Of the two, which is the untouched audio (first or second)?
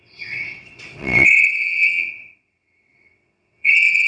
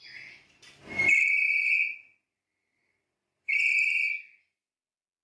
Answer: second